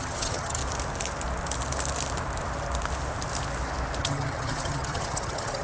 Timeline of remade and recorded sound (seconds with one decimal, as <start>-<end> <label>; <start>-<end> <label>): 0.0-0.6 remade; 0.6-4.0 recorded; 4.0-5.6 remade